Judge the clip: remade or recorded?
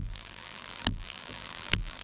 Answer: remade